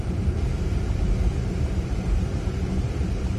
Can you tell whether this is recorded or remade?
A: remade